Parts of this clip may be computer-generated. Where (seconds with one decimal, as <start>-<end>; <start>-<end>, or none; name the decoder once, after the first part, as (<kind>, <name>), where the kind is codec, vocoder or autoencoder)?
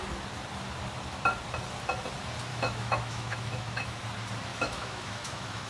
2.5-4.0 (autoencoder, DAC-VAE); 4.5-5.7